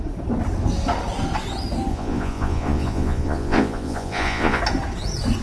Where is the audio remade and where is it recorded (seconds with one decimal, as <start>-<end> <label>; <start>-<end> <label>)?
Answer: 0.0-1.9 recorded; 1.9-4.6 remade; 4.6-5.4 recorded